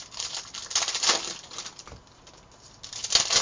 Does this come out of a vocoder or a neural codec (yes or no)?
no